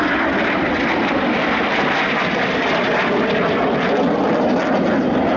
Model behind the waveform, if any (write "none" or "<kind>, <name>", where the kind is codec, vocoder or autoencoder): none